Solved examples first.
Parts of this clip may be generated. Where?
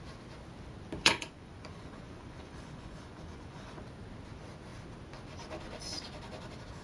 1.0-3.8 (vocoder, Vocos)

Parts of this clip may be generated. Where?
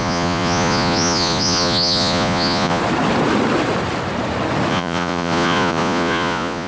0.0-2.8 (vocoder, Vocos); 4.7-6.7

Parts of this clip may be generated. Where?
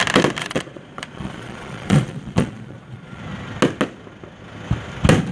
0.4-3.2 (vocoder, Vocos)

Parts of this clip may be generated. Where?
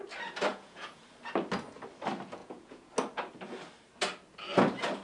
0.5-1.0 (vocoder, Vocos); 2.4-2.9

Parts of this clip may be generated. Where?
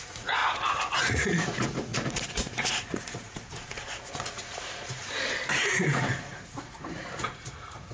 0.0-5.0 (vocoder, Vocos); 5.6-7.9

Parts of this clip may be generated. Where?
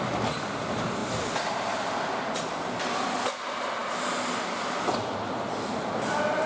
none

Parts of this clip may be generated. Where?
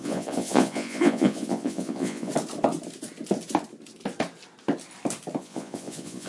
0.0-2.3 (vocoder, Vocos); 5.4-6.3